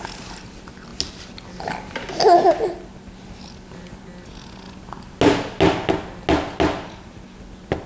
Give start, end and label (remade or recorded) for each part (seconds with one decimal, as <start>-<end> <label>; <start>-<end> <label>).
0.0-7.9 recorded